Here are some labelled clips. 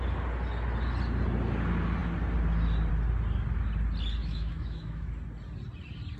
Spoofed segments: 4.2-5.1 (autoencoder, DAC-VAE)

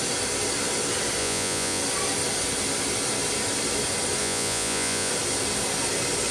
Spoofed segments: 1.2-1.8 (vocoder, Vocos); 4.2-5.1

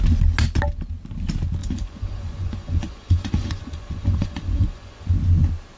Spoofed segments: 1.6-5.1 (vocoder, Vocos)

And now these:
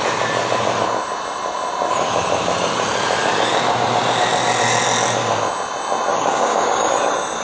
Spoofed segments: 6.1-6.9 (codec, DAC)